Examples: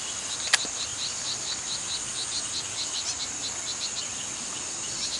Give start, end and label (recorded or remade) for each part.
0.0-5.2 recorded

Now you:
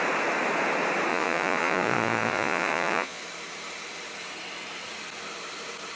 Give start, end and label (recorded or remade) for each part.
0.0-1.1 recorded; 1.1-3.2 remade; 3.2-6.0 recorded